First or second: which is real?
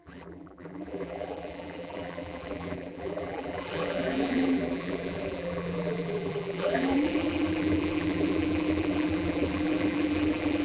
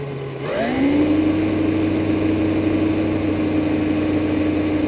second